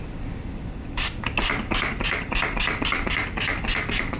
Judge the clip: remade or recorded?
recorded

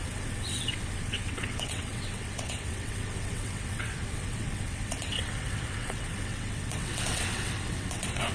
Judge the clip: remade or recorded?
remade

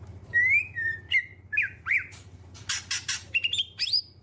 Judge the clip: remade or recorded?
remade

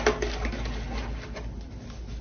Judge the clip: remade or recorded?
recorded